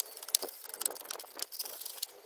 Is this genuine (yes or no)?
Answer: yes